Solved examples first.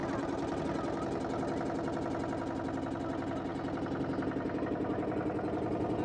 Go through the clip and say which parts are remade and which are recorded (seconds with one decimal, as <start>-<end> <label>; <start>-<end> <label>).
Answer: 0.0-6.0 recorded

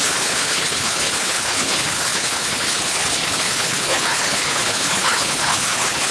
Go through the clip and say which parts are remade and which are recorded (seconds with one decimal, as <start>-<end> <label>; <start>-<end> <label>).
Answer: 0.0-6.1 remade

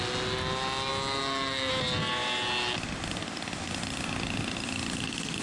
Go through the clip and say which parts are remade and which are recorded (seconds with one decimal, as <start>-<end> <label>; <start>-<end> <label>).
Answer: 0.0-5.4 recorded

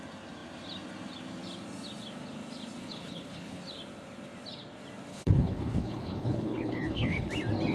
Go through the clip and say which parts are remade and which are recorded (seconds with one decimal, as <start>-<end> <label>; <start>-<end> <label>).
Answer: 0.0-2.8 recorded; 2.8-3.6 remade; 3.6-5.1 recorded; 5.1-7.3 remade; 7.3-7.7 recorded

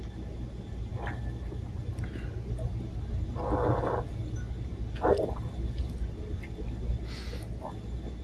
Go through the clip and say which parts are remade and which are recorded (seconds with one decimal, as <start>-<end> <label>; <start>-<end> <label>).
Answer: 0.0-8.2 recorded

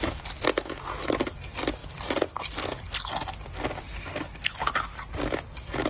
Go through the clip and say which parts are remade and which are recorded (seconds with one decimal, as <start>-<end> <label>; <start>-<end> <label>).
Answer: 0.0-5.9 recorded

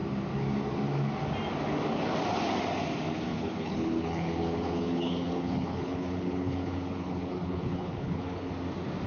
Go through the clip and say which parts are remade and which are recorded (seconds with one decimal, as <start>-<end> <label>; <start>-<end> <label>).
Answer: 0.0-3.3 recorded; 3.3-8.5 remade; 8.5-9.1 recorded

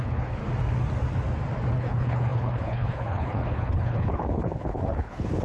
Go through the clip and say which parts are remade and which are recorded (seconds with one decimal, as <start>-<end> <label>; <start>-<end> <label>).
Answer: 0.0-0.4 remade; 0.4-1.7 recorded; 1.7-5.4 remade